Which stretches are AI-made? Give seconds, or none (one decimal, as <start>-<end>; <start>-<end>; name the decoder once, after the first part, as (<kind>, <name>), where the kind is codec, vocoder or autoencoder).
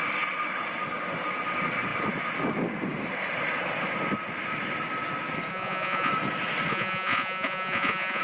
5.5-6.1 (vocoder, Vocos); 6.7-8.2